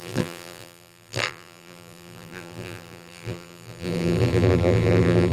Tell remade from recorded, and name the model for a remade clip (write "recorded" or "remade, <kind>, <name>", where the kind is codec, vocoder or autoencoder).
remade, vocoder, BigVGAN v2